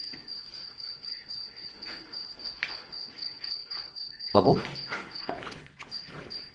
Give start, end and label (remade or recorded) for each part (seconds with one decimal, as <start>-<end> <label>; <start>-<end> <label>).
0.0-6.5 remade